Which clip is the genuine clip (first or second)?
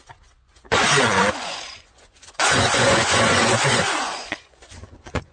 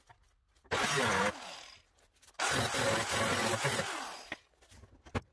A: second